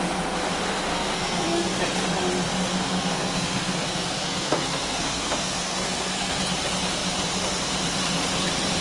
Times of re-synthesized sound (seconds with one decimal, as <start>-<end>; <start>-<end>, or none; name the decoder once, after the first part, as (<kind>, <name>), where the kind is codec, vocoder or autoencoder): 0.9-1.8 (codec, SNAC); 2.7-6.4